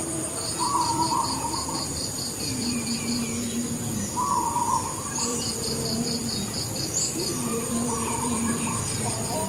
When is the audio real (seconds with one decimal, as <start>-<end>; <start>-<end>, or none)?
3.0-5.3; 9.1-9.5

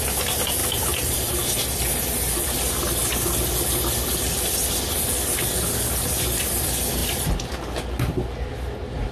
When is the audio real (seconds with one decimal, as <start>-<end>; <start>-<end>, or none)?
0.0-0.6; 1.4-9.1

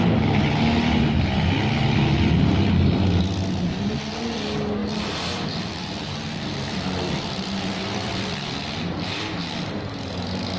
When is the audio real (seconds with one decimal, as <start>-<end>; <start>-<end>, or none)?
0.0-4.8; 9.3-10.6

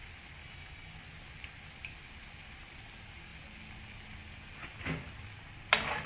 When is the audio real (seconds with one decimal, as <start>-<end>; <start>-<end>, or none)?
0.0-0.4; 0.9-6.1

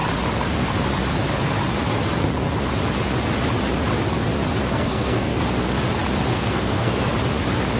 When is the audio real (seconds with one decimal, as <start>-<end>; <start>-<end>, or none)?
0.0-4.7; 5.3-6.3; 7.1-7.8

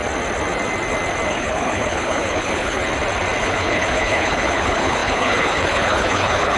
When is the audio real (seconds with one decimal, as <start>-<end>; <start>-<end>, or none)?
0.0-1.3; 2.8-3.4

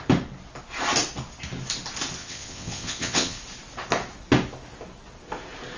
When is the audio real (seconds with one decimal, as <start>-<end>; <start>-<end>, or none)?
0.0-2.2; 3.4-5.8